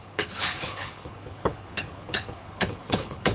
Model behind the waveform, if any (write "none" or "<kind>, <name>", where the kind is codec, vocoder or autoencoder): codec, HILCodec